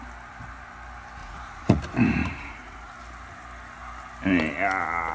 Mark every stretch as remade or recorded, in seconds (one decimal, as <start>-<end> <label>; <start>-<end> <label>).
0.0-1.2 recorded; 1.2-1.8 remade; 1.8-2.2 recorded; 2.2-2.9 remade; 2.9-5.1 recorded